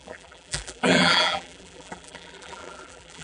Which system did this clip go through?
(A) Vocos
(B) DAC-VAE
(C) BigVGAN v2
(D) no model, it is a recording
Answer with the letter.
C